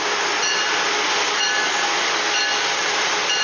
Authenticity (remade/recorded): recorded